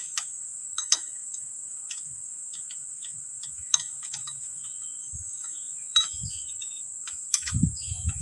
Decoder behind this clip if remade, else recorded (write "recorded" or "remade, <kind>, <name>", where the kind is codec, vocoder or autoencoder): remade, autoencoder, DAC-VAE